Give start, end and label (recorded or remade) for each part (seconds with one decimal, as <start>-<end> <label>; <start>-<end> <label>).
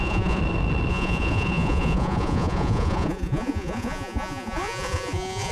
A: 0.0-0.4 remade; 0.4-0.9 recorded; 0.9-5.5 remade